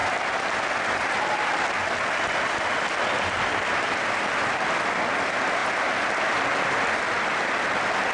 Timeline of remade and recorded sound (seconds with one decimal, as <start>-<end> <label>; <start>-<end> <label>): 0.0-8.1 recorded